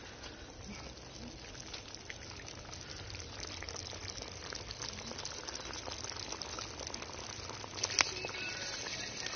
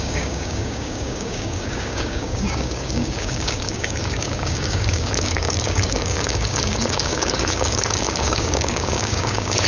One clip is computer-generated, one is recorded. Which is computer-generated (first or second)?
second